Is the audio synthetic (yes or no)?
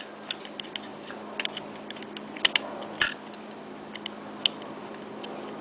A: no